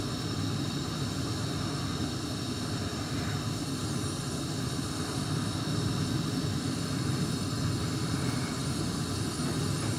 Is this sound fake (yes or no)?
no